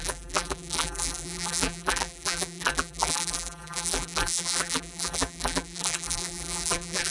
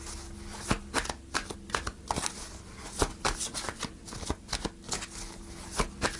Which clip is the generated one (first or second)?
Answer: first